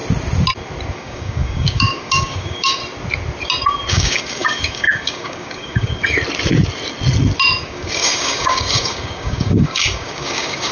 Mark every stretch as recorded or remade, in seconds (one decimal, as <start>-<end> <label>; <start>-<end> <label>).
0.0-0.9 recorded; 0.9-2.8 remade; 2.8-3.9 recorded; 3.9-6.0 remade; 6.0-7.6 recorded; 7.6-10.7 remade